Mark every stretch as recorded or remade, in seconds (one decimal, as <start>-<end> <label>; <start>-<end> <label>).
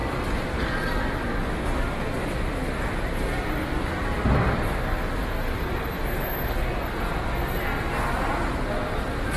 0.0-9.4 recorded